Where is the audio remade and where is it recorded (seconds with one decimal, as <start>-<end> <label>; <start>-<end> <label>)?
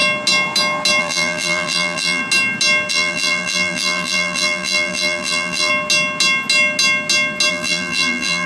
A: 0.0-1.0 recorded; 1.0-2.2 remade; 2.2-2.9 recorded; 2.9-5.7 remade; 5.7-7.5 recorded; 7.5-8.5 remade